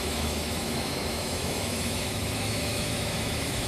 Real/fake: fake